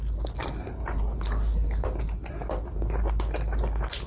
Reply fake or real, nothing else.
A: real